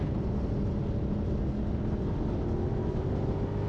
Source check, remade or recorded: recorded